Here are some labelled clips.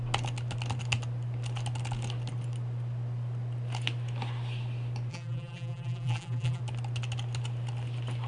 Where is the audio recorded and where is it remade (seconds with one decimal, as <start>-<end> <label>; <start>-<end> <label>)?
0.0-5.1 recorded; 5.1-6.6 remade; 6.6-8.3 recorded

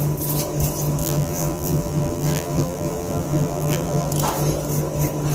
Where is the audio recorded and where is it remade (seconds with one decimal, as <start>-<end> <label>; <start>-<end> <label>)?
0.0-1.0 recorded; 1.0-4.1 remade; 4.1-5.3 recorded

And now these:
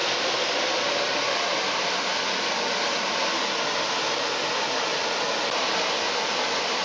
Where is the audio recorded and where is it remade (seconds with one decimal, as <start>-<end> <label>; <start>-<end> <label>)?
0.0-1.3 recorded; 1.3-2.1 remade; 2.1-6.2 recorded; 6.2-6.8 remade